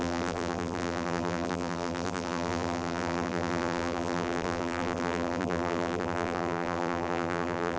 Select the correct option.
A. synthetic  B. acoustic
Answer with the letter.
A